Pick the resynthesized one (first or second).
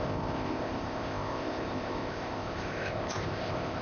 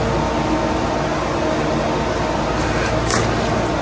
first